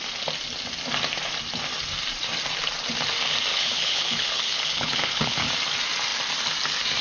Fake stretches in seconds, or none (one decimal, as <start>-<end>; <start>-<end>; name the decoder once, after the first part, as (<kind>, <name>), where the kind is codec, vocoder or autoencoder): 3.5-5.5 (codec, HILCodec)